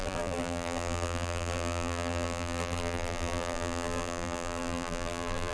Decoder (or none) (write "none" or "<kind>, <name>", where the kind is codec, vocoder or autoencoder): vocoder, BigVGAN v2